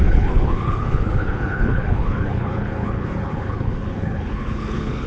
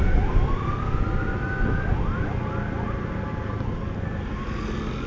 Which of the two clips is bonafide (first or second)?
second